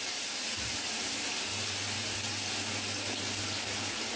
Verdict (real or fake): real